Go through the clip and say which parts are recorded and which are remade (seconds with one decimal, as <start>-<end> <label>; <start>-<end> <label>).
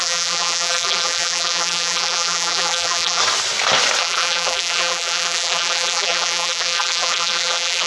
0.0-3.2 remade; 3.2-4.0 recorded; 4.0-7.9 remade